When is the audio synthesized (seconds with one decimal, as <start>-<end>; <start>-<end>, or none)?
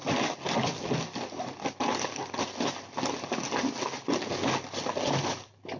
none